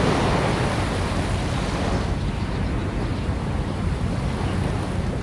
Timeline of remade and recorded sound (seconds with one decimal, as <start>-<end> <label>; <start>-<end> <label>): 0.0-5.2 recorded